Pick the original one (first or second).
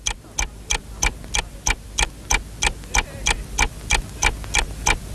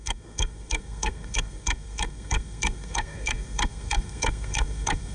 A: first